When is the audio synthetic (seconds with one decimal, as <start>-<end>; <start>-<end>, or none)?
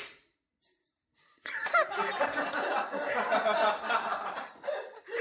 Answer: 0.0-3.1